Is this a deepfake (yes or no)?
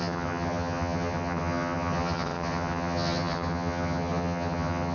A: yes